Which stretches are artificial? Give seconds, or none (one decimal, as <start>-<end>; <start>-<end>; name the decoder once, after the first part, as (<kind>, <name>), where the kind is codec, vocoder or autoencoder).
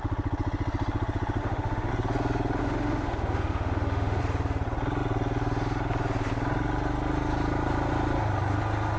1.4-1.9 (autoencoder, DAC-VAE); 2.6-4.2